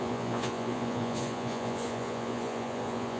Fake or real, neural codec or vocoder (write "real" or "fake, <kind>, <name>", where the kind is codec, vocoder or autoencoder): fake, vocoder, Vocos